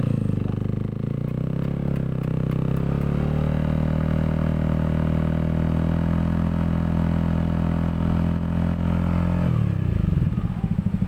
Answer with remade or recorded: recorded